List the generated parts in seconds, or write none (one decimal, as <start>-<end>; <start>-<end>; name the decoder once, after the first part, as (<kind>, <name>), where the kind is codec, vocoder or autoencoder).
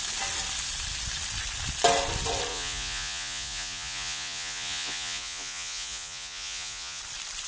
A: 2.5-7.0 (vocoder, Vocos)